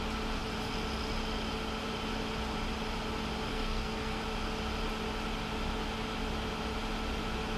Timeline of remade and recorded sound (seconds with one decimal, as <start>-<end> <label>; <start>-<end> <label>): 0.0-3.5 recorded; 3.5-4.2 remade; 4.2-7.6 recorded